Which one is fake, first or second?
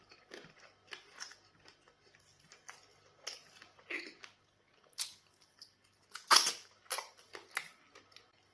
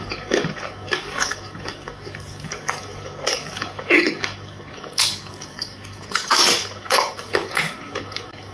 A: second